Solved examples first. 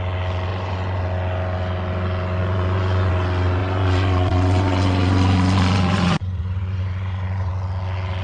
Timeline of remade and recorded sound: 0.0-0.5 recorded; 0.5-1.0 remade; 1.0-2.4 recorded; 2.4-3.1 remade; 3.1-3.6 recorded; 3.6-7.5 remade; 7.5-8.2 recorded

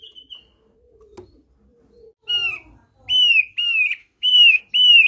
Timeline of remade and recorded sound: 0.0-4.0 recorded; 4.0-4.6 remade; 4.6-5.1 recorded

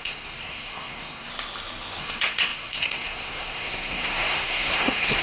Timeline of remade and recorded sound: 0.0-1.3 remade; 1.3-2.0 recorded; 2.0-5.2 remade

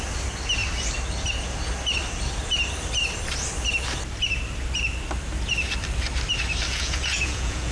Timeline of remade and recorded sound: 0.0-6.7 recorded; 6.7-7.7 remade

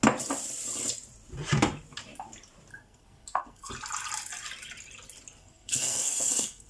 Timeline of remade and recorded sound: 0.0-2.7 recorded; 2.7-3.7 remade; 3.7-5.4 recorded; 5.4-6.7 remade

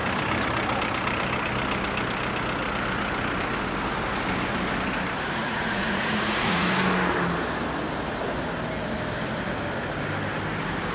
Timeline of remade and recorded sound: 0.0-5.4 recorded; 5.4-6.7 remade; 6.7-10.9 recorded

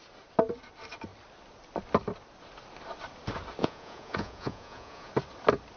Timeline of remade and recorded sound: 0.0-3.6 recorded; 3.6-5.1 remade; 5.1-5.8 recorded